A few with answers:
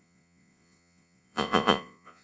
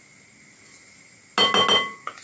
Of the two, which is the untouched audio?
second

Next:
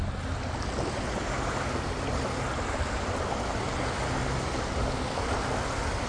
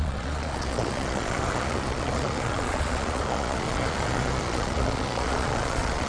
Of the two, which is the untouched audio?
first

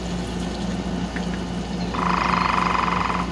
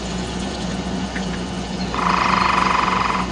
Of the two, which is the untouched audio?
first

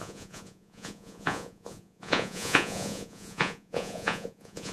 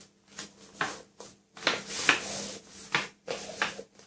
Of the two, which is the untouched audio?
second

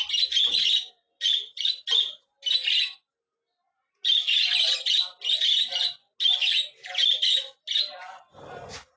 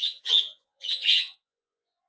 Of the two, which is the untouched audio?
first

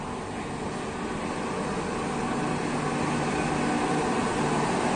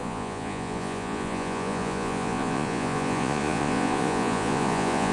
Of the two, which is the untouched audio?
first